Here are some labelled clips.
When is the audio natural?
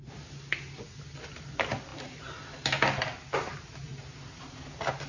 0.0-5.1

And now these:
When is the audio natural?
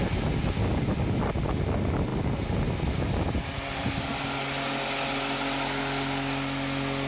0.0-7.1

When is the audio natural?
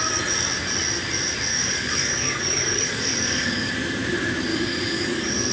0.0-1.5; 3.7-4.5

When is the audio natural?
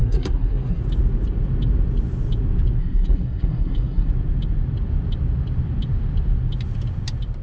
0.8-2.8; 4.1-7.4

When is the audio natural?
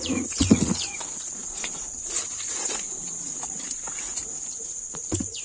1.8-2.7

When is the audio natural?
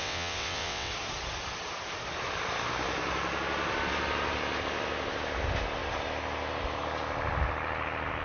0.9-8.2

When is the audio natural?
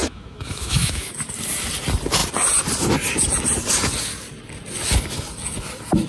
1.1-6.1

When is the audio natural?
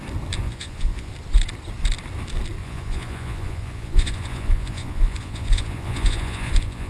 0.0-0.4; 1.1-2.6